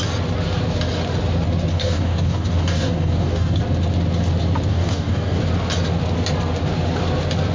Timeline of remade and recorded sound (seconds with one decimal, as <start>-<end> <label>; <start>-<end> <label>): 0.0-1.7 recorded; 1.7-3.6 remade; 3.6-4.7 recorded; 4.7-5.4 remade; 5.4-7.5 recorded